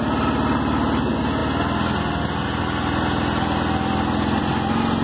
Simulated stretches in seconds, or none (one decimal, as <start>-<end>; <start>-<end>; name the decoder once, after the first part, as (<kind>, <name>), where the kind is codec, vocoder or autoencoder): none